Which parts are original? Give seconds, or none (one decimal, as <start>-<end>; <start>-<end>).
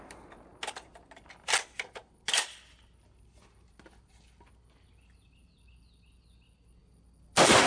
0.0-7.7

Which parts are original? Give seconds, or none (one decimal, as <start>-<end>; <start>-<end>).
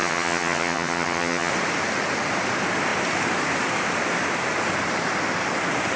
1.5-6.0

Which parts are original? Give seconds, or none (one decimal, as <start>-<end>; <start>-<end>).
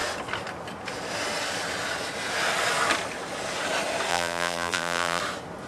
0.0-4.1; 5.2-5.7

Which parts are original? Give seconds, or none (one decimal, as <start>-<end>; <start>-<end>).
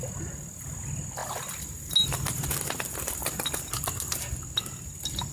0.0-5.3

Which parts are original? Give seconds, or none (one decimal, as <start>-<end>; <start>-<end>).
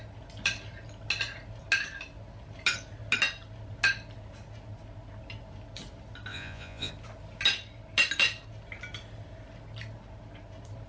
0.0-6.3; 6.9-10.9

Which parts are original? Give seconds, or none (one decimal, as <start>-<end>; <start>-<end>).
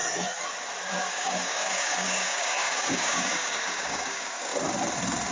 0.0-0.9; 4.5-5.3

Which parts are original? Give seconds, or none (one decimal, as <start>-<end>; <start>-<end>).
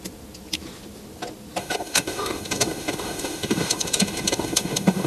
0.0-1.6